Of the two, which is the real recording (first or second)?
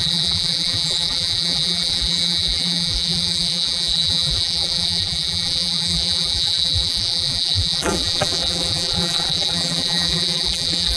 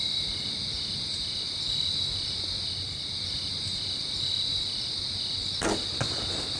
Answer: second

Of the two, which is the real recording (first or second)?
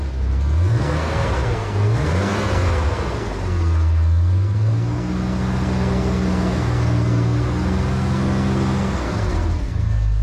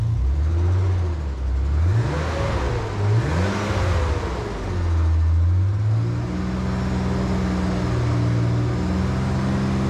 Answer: second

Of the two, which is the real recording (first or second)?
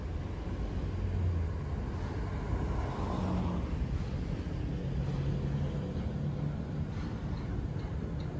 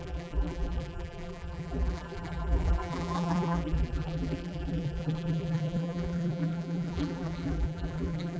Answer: first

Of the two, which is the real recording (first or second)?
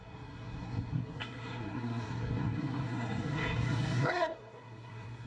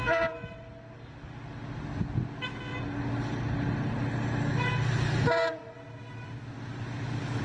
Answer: second